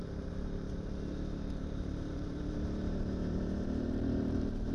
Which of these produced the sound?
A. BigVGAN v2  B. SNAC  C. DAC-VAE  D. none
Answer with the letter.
A